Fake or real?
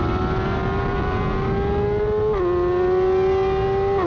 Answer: real